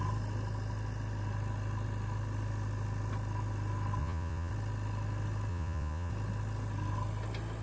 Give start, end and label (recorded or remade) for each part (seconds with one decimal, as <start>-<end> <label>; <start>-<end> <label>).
0.0-4.0 recorded; 4.0-4.5 remade; 4.5-5.5 recorded; 5.5-6.1 remade; 6.1-7.6 recorded